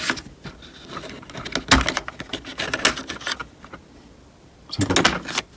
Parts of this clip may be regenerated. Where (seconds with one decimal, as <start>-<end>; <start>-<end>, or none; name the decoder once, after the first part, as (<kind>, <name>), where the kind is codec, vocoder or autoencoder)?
none